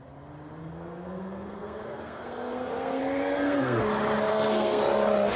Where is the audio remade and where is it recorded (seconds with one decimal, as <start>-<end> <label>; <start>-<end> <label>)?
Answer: 0.0-0.6 recorded; 0.6-3.8 remade; 3.8-4.3 recorded; 4.3-4.8 remade; 4.8-5.4 recorded

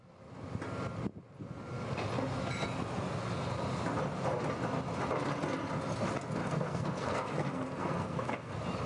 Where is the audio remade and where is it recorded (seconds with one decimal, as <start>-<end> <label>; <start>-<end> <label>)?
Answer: 0.0-6.4 recorded; 6.4-8.5 remade; 8.5-8.9 recorded

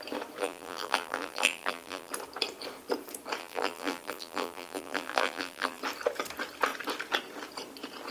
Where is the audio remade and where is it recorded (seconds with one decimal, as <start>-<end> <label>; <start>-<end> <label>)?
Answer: 0.0-0.4 recorded; 0.4-2.1 remade; 2.1-3.4 recorded; 3.4-5.8 remade; 5.8-8.1 recorded

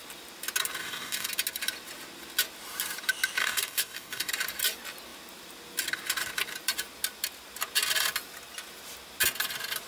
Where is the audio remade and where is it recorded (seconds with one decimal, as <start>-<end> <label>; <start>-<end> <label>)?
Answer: 0.0-0.8 recorded; 0.8-1.3 remade; 1.3-3.4 recorded; 3.4-4.3 remade; 4.3-9.9 recorded

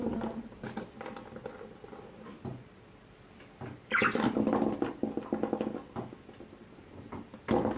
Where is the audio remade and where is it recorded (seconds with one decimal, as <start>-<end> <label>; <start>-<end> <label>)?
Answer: 0.0-7.8 recorded

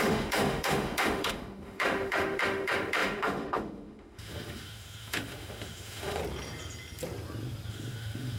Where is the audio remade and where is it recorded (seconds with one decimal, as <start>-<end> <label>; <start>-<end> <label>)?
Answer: 0.0-6.2 remade; 6.2-7.7 recorded; 7.7-8.4 remade

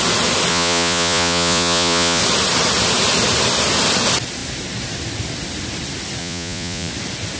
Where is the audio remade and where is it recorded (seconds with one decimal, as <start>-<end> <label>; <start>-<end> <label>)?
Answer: 0.0-0.5 recorded; 0.5-2.2 remade; 2.2-6.2 recorded; 6.2-6.9 remade; 6.9-7.4 recorded